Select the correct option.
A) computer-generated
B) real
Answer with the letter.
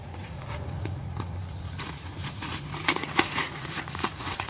A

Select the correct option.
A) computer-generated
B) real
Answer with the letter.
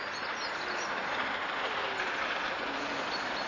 B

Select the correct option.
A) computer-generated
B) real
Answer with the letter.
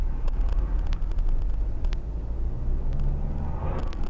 B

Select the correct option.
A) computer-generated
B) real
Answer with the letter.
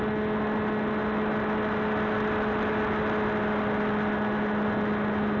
B